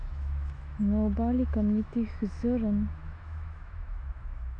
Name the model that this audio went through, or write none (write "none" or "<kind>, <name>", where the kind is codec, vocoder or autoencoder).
autoencoder, DAC-VAE